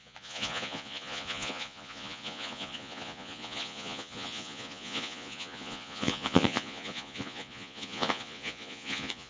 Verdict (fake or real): fake